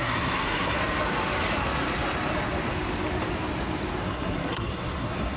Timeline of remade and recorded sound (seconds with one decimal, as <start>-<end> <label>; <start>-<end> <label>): 0.0-0.8 remade; 0.8-4.0 recorded; 4.0-5.4 remade